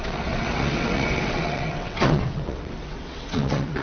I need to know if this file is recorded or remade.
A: remade